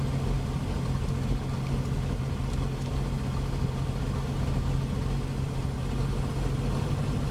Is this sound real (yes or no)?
yes